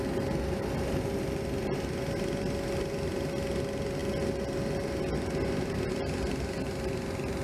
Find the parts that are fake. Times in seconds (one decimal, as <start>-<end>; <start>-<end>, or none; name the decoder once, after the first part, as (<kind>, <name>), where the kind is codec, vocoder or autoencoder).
none